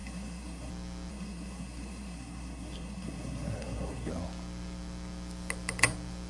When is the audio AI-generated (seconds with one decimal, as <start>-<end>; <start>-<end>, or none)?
0.0-0.7; 1.1-4.1